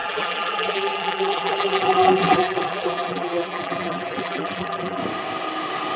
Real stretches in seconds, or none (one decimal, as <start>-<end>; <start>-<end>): 5.0-6.0